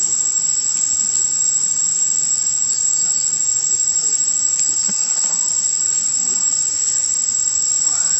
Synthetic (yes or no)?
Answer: no